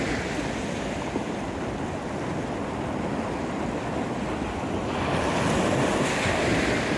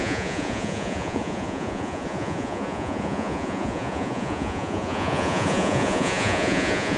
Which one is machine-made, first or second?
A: second